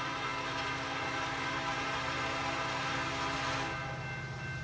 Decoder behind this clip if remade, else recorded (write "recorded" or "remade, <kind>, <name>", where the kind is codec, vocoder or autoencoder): recorded